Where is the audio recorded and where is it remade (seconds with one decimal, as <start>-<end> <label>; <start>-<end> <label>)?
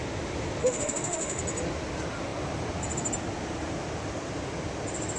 0.0-0.6 recorded; 0.6-1.4 remade; 1.4-5.2 recorded